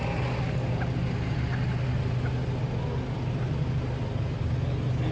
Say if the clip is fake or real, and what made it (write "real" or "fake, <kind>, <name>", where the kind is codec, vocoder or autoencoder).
real